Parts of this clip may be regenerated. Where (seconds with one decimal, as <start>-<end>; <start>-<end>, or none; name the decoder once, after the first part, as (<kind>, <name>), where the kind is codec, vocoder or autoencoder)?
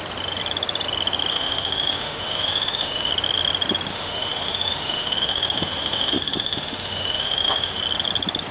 1.3-3.1 (autoencoder, DAC-VAE); 3.9-7.8